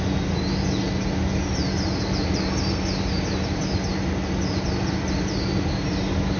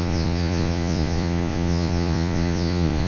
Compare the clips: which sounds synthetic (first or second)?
second